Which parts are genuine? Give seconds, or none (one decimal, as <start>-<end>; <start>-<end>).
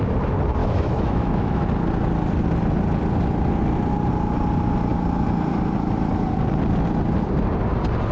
0.0-0.6; 1.6-8.1